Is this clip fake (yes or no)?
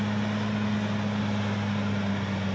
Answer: no